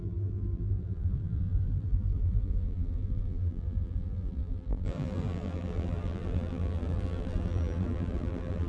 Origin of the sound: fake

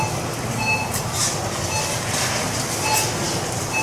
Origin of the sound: real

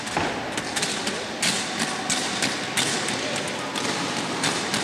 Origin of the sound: real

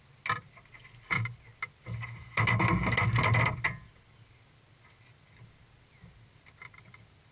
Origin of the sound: real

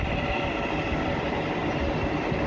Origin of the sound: real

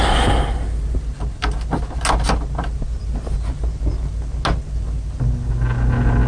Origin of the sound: real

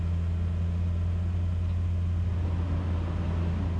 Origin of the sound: real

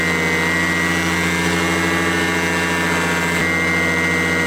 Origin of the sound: real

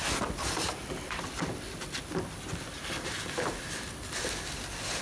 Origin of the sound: real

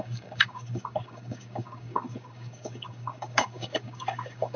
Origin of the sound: fake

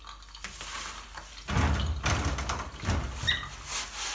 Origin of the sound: real